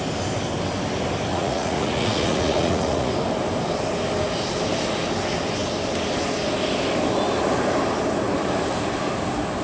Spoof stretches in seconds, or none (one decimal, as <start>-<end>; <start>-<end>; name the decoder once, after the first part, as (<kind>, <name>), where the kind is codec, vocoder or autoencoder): 1.3-3.1 (vocoder, Vocos)